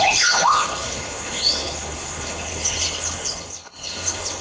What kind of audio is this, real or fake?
fake